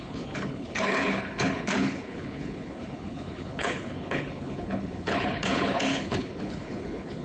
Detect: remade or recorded remade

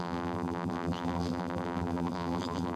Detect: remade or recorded remade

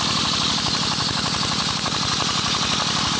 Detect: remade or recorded recorded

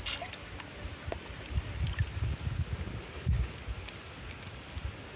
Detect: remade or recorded recorded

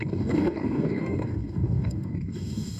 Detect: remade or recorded remade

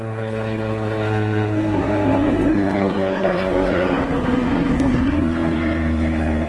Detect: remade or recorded remade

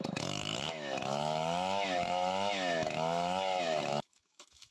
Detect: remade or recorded remade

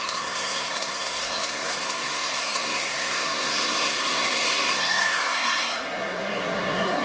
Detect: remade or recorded remade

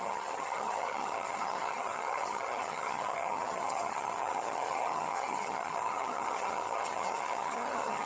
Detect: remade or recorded remade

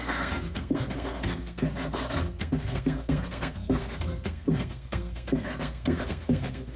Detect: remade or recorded remade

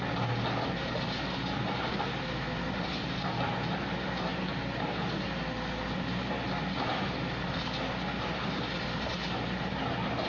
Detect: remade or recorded recorded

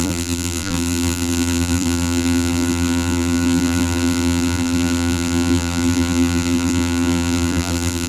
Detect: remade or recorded remade